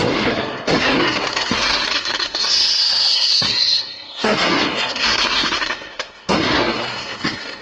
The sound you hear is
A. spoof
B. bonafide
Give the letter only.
A